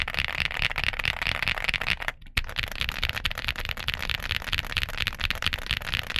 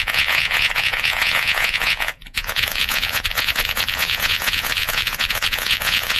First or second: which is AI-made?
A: second